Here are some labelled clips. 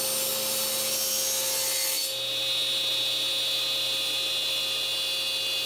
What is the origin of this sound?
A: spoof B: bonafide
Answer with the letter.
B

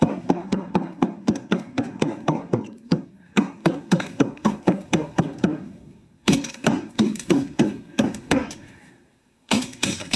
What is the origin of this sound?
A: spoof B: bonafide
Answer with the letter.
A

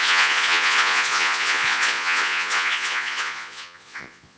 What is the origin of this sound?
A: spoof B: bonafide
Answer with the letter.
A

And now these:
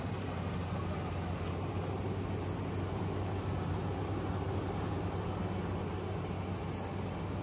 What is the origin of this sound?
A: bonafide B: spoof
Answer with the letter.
A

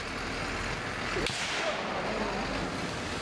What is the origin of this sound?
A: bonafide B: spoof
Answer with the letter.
A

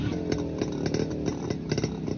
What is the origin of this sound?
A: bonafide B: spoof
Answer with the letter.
A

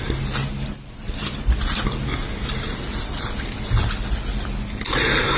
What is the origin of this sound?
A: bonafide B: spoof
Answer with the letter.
A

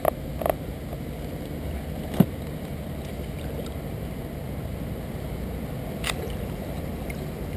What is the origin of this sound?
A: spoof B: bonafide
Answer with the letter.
B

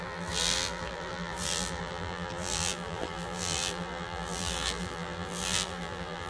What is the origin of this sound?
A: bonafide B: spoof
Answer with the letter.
B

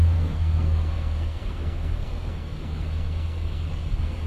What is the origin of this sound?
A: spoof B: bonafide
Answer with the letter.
A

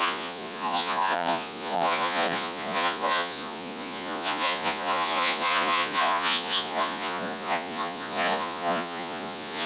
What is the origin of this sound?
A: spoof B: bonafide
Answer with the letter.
A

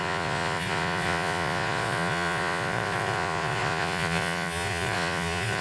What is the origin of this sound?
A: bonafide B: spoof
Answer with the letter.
B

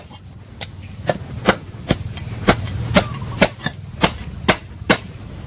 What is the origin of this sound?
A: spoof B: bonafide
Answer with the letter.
B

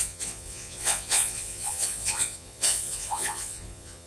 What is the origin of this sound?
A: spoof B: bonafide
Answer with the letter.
A